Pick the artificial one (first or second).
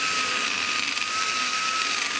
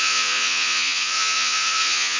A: second